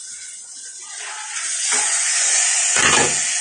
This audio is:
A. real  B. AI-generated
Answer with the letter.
B